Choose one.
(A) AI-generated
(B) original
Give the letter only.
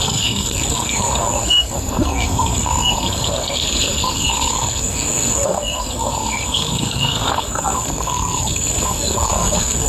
A